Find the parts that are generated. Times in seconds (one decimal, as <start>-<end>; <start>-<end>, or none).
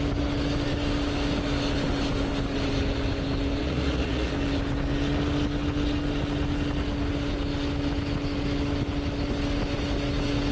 3.6-4.3